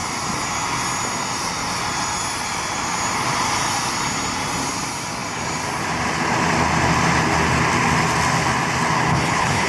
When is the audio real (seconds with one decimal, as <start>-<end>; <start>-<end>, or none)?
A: 0.0-9.1